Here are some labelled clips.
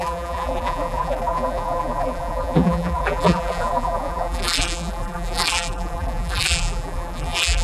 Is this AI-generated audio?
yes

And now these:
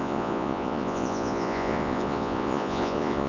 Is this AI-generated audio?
yes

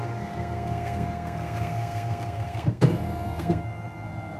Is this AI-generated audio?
yes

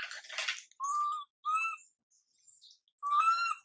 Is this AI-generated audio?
no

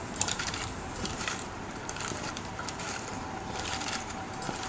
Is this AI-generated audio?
yes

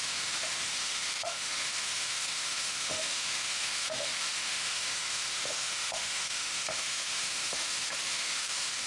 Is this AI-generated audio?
yes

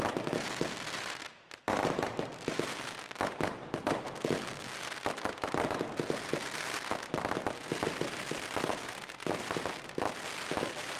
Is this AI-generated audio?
yes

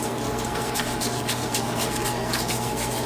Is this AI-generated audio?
yes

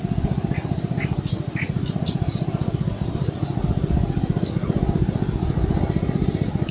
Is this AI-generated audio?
no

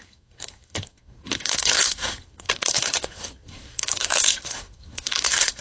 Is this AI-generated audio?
yes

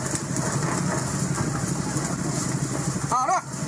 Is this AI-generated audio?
no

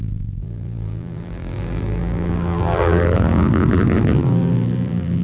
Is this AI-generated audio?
yes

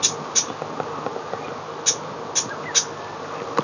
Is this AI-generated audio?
no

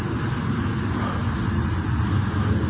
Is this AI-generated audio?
no